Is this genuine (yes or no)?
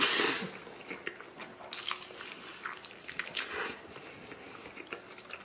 yes